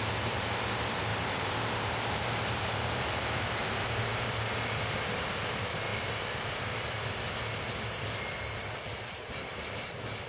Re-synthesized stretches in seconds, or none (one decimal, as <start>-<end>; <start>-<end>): 1.1-4.3

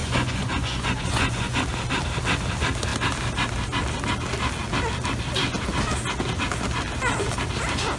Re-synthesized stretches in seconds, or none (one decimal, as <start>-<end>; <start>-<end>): 0.0-1.6

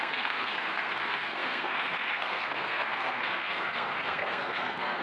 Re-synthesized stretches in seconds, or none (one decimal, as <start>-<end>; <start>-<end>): 0.0-5.0